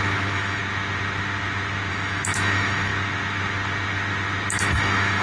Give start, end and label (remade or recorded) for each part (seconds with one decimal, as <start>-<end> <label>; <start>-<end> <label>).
0.0-0.6 remade; 0.6-1.9 recorded; 1.9-2.9 remade; 2.9-4.5 recorded; 4.5-5.2 remade